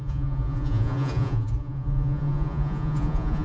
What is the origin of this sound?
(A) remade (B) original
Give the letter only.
A